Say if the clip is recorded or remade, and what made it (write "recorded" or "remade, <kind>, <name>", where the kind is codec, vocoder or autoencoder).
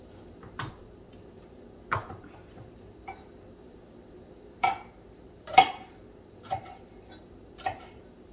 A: remade, vocoder, BigVGAN v2